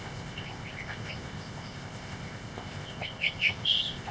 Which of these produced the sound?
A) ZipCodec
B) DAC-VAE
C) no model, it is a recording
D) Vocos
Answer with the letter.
A